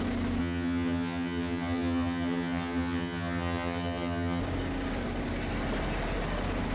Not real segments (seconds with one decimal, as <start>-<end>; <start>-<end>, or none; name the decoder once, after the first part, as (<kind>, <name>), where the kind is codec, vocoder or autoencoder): 0.4-4.4 (vocoder, HiFi-GAN)